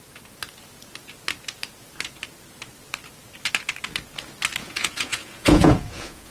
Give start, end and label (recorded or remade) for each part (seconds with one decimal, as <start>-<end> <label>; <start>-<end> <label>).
0.0-4.6 recorded; 4.6-6.3 remade